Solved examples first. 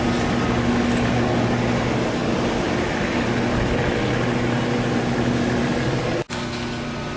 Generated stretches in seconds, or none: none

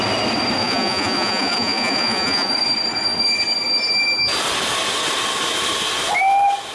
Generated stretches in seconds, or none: 0.6-2.5 (vocoder, Vocos)

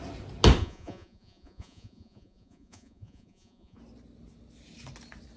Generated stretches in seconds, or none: 0.6-3.8 (vocoder, Vocos)

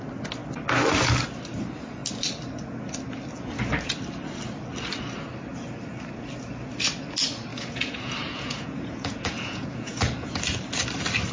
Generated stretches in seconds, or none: 7.5-10.4 (vocoder, Vocos)

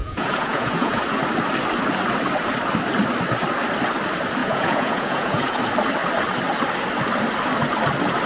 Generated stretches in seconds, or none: 0.0-1.2 (vocoder, Vocos); 4.4-5.6